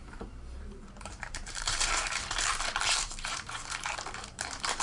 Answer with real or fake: fake